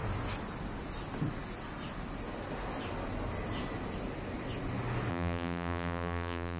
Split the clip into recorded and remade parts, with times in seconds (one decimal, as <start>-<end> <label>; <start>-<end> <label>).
0.0-5.1 recorded; 5.1-6.6 remade